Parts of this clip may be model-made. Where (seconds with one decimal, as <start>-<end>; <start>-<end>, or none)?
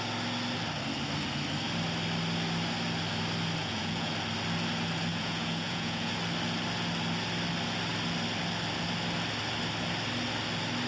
3.6-4.1; 5.1-6.1